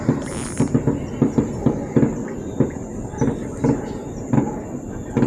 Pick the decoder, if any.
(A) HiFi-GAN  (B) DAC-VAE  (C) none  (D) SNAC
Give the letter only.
C